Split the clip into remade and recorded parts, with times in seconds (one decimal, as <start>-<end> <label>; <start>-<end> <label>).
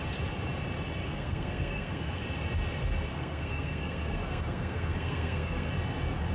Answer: 0.0-1.0 recorded; 1.0-2.2 remade; 2.2-3.1 recorded; 3.1-5.7 remade; 5.7-6.3 recorded